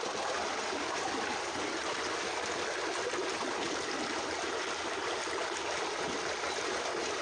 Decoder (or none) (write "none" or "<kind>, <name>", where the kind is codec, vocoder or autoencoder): none